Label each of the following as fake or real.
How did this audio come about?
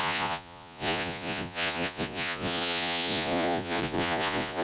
fake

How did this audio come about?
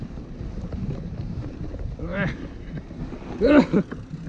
real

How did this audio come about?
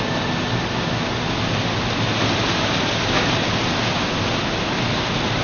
real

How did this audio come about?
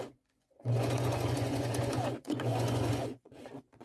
fake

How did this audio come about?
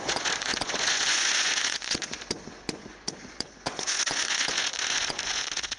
fake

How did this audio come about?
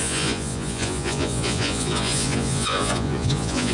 fake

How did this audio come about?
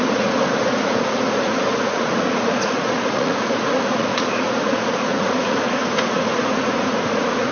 fake